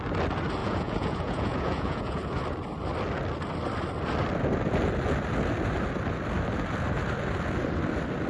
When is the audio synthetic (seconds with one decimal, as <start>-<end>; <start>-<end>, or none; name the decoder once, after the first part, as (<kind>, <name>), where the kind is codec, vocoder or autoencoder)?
0.6-2.4 (vocoder, Vocos)